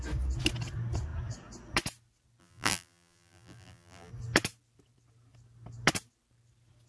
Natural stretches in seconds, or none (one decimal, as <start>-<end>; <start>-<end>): 0.0-2.4; 4.1-6.9